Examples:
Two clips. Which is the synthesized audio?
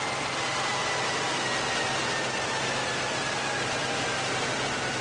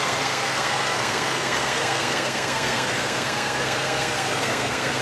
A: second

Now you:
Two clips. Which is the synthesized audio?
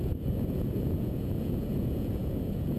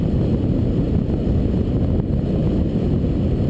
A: first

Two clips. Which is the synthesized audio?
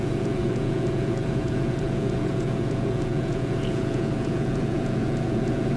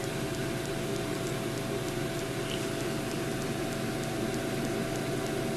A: first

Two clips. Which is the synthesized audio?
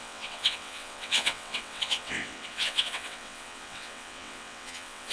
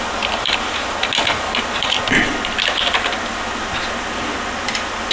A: first